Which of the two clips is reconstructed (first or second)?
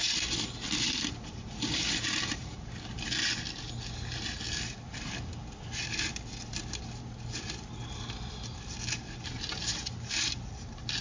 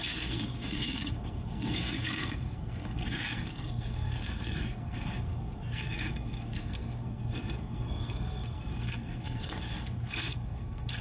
second